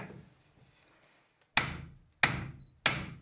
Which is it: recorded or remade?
recorded